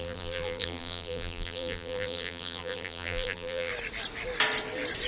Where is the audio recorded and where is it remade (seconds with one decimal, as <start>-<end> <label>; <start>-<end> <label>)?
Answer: 0.0-3.7 remade; 3.7-5.1 recorded